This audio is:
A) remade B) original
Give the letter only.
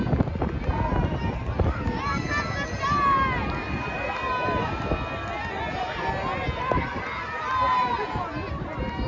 B